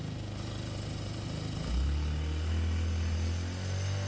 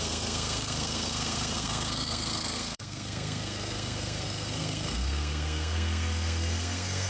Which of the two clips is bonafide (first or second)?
first